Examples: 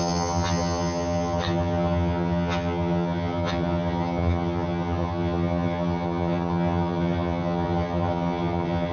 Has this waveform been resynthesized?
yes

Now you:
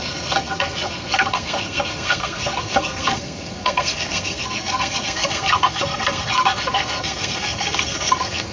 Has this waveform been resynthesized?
yes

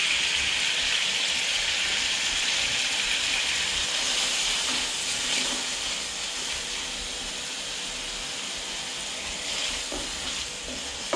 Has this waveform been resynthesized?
no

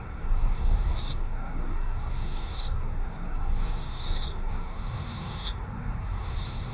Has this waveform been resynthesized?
yes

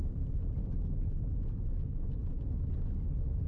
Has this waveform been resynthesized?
no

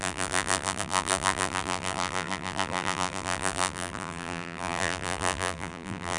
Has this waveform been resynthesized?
yes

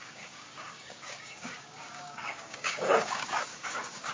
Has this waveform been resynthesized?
yes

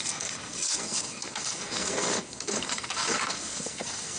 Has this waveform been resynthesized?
yes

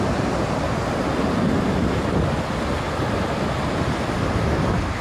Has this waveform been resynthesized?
no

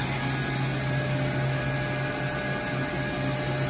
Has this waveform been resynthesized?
no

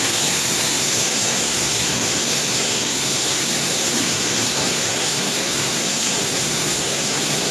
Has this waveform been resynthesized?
yes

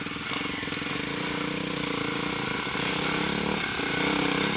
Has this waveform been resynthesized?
no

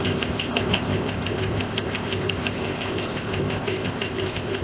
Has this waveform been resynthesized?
yes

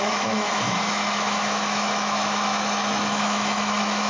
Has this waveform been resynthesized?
yes